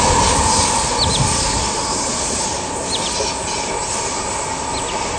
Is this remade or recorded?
recorded